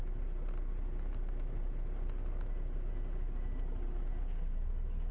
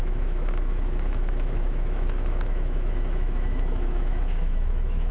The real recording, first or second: first